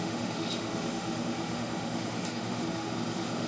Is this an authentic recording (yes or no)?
no